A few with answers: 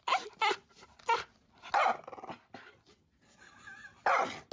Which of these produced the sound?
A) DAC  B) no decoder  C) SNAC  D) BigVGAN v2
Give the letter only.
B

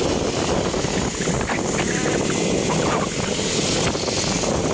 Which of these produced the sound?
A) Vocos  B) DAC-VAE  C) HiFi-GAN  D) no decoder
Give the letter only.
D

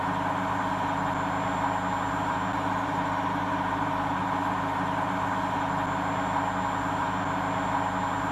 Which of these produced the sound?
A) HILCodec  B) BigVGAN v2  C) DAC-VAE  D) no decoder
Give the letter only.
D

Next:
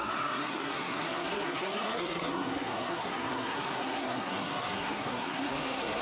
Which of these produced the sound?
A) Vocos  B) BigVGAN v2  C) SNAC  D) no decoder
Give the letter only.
C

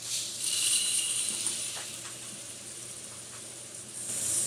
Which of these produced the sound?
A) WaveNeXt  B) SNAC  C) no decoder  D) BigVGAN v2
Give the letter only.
D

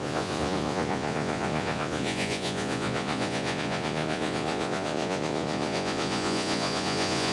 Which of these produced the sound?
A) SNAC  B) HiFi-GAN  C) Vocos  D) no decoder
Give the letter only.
C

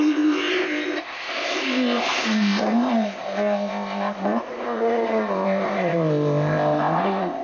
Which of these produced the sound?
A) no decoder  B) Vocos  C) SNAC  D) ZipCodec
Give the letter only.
D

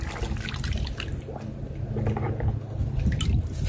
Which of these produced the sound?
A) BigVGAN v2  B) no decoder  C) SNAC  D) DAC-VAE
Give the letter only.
B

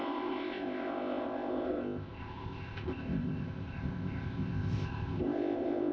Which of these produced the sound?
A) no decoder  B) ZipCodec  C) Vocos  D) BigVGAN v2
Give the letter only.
B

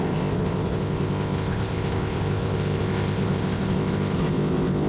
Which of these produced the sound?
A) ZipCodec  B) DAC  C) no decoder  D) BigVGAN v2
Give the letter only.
A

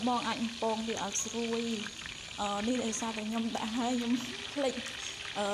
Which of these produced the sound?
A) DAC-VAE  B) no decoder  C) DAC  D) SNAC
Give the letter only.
B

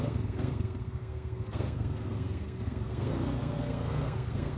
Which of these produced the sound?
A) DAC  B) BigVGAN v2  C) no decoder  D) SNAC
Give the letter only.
D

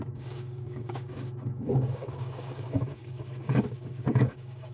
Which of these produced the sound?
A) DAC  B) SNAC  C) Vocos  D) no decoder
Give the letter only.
A